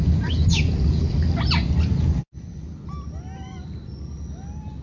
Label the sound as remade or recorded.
recorded